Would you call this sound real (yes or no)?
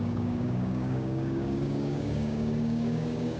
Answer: no